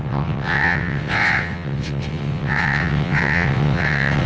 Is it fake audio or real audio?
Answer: fake